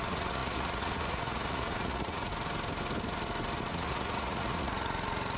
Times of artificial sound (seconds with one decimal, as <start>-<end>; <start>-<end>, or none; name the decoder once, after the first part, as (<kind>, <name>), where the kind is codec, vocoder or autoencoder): 0.0-2.3 (vocoder, Vocos); 3.7-5.4